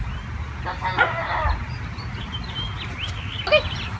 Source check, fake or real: real